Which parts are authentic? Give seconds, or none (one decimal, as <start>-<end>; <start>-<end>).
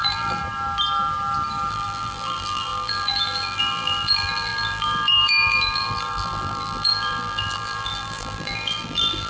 0.4-1.7